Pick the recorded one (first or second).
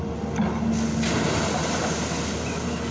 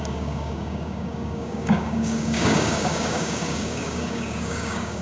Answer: first